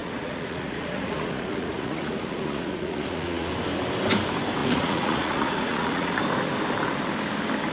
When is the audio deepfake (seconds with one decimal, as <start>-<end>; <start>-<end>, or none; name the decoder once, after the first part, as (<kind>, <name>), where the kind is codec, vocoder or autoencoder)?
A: 0.0-3.5 (vocoder, Vocos); 4.6-6.2